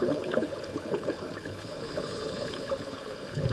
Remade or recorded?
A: remade